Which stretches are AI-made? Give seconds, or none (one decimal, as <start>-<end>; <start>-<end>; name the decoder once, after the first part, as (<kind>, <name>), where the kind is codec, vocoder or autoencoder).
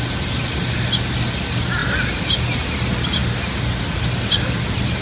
none